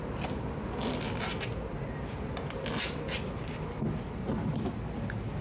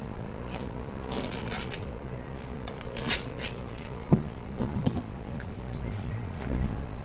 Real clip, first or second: first